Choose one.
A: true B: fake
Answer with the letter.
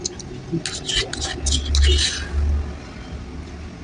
A